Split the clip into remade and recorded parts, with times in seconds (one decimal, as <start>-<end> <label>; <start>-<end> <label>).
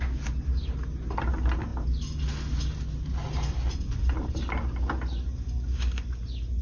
0.0-6.6 recorded